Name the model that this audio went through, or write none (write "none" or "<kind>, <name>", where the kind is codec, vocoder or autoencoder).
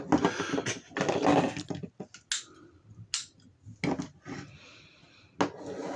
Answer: none